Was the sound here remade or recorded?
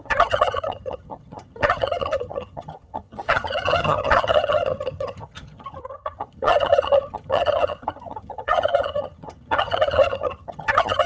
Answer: remade